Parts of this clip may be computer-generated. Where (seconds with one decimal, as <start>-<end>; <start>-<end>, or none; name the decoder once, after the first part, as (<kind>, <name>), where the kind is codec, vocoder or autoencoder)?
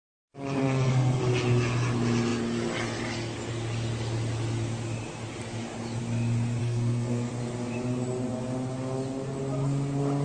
0.6-1.2 (codec, SNAC); 6.6-7.3